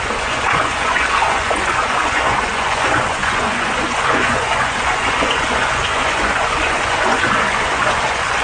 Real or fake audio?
fake